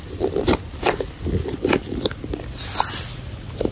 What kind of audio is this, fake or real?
real